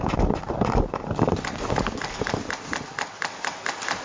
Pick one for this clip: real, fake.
real